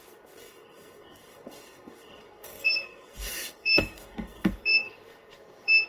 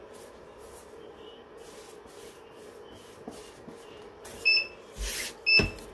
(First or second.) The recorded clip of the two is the second